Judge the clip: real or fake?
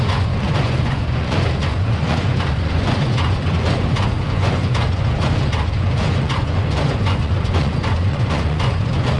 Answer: fake